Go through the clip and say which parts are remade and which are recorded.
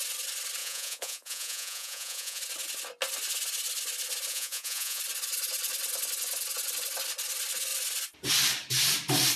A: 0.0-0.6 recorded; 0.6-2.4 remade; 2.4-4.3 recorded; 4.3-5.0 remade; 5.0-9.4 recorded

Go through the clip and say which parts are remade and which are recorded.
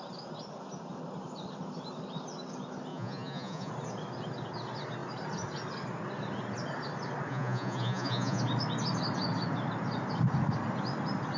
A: 0.0-2.9 recorded; 2.9-3.7 remade; 3.7-7.3 recorded; 7.3-8.4 remade; 8.4-11.4 recorded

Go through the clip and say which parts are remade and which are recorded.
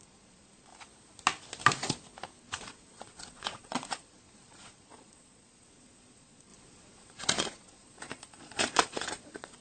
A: 0.0-0.7 remade; 0.7-2.4 recorded; 2.4-9.6 remade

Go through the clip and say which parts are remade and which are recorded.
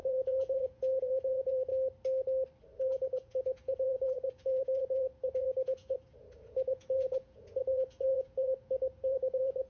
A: 0.0-1.7 remade; 1.7-2.8 recorded; 2.8-9.7 remade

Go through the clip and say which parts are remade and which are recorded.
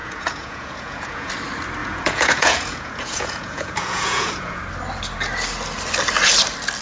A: 0.0-1.3 remade; 1.3-1.8 recorded; 1.8-4.6 remade; 4.6-6.8 recorded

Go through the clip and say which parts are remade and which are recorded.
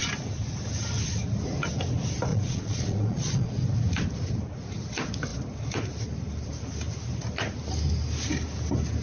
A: 0.0-2.3 recorded; 2.3-3.5 remade; 3.5-9.0 recorded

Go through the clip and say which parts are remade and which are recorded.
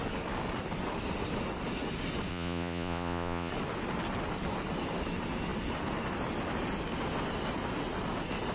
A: 0.0-2.3 recorded; 2.3-3.5 remade; 3.5-8.5 recorded